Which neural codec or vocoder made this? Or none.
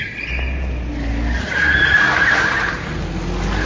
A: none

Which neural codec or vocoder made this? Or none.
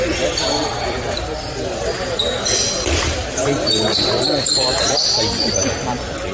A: none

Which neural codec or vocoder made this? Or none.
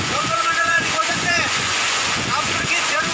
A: vocoder, Vocos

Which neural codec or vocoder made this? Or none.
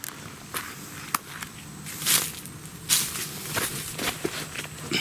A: none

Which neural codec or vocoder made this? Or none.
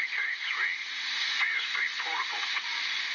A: vocoder, Vocos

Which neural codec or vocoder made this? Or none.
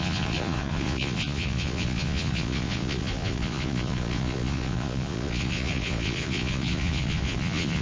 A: vocoder, Vocos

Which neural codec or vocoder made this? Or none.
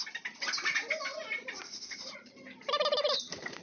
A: none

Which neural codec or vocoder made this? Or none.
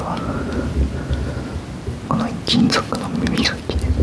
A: none